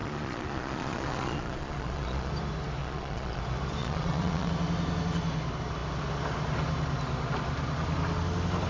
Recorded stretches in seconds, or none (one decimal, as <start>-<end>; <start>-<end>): 2.3-2.8; 3.4-3.8; 4.5-8.7